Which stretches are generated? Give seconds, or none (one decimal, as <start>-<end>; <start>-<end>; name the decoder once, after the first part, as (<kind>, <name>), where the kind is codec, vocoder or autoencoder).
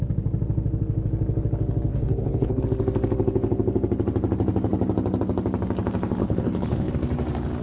1.9-2.6 (codec, HILCodec); 6.2-6.9